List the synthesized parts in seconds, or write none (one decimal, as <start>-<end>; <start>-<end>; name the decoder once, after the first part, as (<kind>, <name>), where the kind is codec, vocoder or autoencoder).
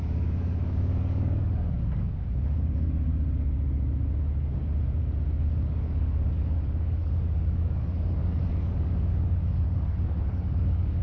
0.0-3.1 (codec, DAC); 5.4-11.0